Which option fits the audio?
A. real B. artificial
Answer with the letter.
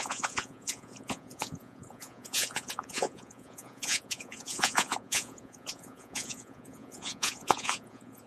B